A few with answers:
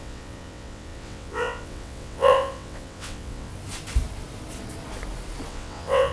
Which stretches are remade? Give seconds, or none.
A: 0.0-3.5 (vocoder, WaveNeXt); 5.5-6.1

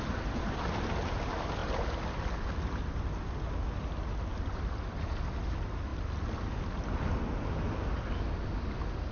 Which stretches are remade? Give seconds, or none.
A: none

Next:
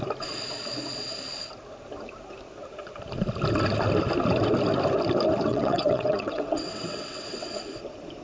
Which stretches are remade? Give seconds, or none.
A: 5.5-7.6 (vocoder, WaveNeXt)

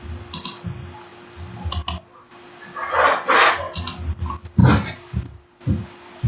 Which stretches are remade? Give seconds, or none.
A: none